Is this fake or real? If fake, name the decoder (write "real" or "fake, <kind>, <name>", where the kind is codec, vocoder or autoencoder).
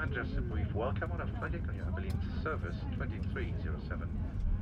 real